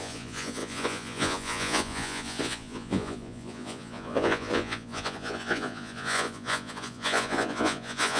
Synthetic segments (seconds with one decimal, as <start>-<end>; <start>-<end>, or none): 0.0-8.2